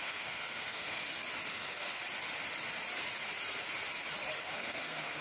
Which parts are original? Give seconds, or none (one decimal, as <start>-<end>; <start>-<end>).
1.0-1.5; 2.0-4.4